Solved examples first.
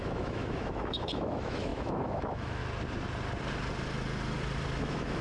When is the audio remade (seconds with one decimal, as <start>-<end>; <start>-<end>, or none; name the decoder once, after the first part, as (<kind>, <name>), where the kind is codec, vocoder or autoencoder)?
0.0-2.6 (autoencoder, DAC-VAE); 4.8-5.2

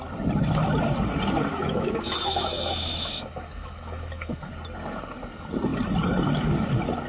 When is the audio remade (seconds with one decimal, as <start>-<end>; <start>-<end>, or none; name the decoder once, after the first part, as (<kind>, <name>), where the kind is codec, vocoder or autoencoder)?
1.5-4.5 (autoencoder, DAC-VAE)

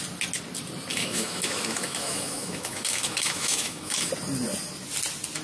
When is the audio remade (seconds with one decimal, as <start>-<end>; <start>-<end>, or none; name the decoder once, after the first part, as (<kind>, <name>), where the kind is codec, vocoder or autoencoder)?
0.9-4.1 (autoencoder, DAC-VAE)

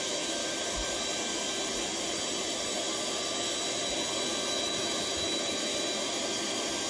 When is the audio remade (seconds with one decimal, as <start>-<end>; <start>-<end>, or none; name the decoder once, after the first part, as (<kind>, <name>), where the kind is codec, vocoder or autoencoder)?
0.0-0.4 (autoencoder, DAC-VAE); 4.5-5.7

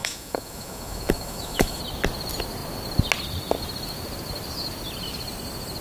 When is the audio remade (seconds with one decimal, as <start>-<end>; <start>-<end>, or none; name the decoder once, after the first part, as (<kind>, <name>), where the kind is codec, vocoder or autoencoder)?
0.0-1.8 (autoencoder, DAC-VAE)